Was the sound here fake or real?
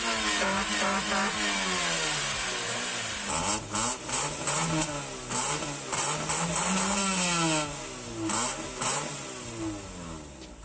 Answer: real